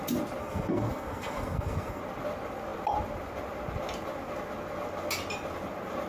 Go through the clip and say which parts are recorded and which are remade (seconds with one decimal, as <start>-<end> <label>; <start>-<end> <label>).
0.0-0.4 recorded; 0.4-2.0 remade; 2.0-6.1 recorded